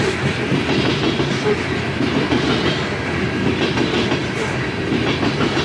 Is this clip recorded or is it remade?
recorded